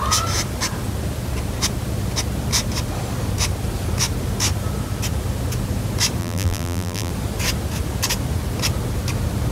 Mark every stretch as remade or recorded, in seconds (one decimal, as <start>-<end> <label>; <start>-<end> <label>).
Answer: 0.0-6.2 recorded; 6.2-7.1 remade; 7.1-9.5 recorded